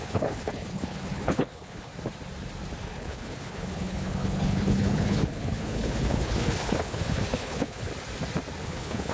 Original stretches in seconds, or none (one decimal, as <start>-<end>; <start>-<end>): 1.9-2.8; 7.9-8.6